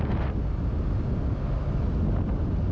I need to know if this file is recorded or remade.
recorded